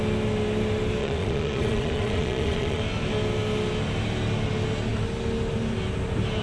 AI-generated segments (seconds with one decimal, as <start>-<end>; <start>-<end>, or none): 1.0-2.8